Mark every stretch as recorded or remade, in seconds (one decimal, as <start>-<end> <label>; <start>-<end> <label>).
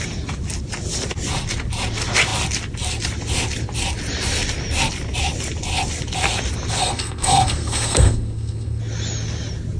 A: 0.0-6.8 recorded; 6.8-8.8 remade; 8.8-9.8 recorded